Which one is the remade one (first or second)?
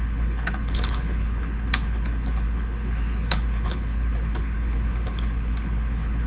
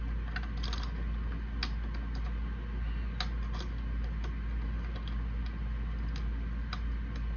first